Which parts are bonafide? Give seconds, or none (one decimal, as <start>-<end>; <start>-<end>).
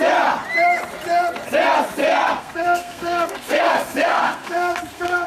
0.0-2.0